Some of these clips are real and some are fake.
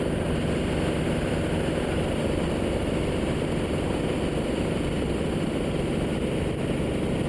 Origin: real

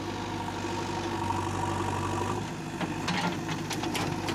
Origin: real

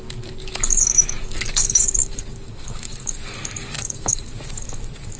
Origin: fake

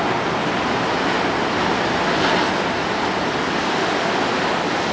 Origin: real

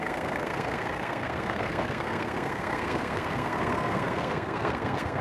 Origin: fake